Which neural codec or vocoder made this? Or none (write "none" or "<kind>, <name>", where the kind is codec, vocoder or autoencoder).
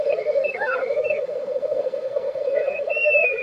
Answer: codec, SNAC